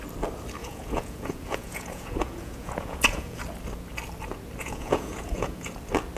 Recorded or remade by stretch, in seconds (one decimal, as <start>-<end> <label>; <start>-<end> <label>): 0.0-0.6 recorded; 0.6-3.4 remade; 3.4-4.6 recorded; 4.6-5.7 remade; 5.7-6.2 recorded